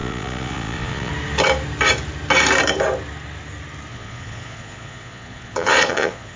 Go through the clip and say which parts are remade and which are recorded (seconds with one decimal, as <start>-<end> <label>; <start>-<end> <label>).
0.0-1.1 remade; 1.1-3.9 recorded; 3.9-6.4 remade